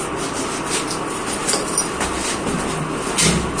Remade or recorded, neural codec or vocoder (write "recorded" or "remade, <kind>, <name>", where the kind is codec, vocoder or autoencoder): recorded